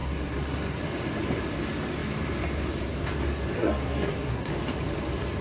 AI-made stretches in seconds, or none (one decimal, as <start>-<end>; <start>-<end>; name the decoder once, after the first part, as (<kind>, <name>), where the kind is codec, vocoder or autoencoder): 0.0-0.8 (codec, SNAC); 3.6-4.5